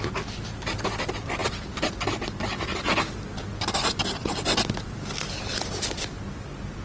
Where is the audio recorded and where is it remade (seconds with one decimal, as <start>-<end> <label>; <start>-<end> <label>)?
0.0-6.8 recorded